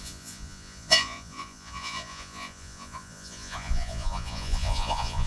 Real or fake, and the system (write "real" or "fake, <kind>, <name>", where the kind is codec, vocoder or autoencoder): fake, vocoder, Vocos